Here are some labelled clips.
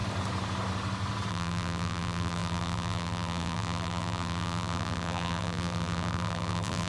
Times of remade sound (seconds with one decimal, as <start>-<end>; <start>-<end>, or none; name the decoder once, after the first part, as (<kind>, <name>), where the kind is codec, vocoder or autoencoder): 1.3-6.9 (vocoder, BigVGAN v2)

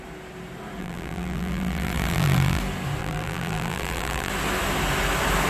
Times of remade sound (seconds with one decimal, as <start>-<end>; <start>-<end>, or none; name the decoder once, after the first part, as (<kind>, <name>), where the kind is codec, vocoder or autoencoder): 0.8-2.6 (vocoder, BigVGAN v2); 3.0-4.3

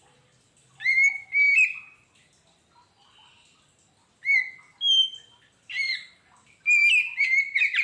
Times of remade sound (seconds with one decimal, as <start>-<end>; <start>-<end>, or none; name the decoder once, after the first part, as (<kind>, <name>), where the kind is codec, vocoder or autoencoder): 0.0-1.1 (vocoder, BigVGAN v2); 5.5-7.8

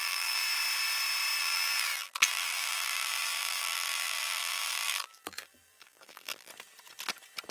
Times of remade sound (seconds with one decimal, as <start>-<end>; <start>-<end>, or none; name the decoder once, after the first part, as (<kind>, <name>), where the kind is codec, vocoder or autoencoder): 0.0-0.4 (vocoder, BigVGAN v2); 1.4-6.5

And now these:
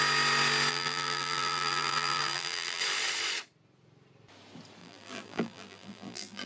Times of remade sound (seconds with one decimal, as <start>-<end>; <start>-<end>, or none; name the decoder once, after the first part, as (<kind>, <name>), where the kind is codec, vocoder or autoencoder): 0.7-2.8 (vocoder, BigVGAN v2); 4.8-6.5